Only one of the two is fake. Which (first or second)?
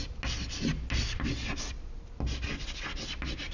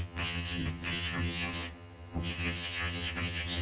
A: second